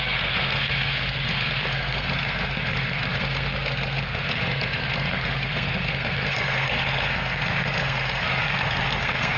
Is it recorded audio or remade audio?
remade